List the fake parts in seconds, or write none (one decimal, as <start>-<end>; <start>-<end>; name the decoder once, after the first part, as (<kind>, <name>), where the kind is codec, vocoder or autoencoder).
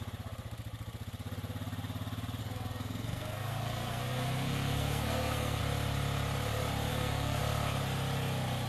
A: 2.4-5.6 (codec, SNAC); 6.9-7.4